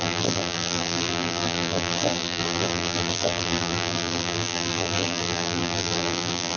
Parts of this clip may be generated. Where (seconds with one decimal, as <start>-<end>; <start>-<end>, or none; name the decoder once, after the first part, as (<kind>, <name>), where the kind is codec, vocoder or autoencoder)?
0.0-6.6 (vocoder, BigVGAN v2)